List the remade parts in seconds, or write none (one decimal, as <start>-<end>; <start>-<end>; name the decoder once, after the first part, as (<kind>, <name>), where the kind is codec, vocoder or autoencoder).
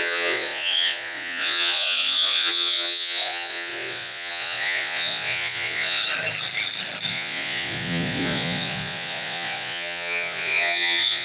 0.0-6.0 (vocoder, Vocos); 7.1-11.2